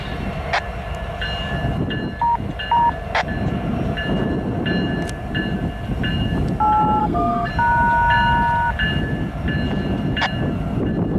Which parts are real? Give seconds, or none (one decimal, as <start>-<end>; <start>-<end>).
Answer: 0.0-7.0; 7.5-11.2